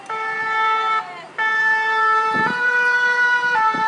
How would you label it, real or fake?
fake